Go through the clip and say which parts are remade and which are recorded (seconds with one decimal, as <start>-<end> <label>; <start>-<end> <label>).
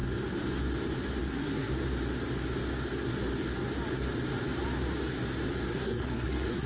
0.0-1.2 recorded; 1.2-1.7 remade; 1.7-5.7 recorded; 5.7-6.7 remade